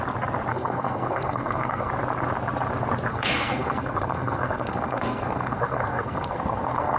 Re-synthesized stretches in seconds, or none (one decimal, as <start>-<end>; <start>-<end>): 0.5-1.9; 3.1-7.0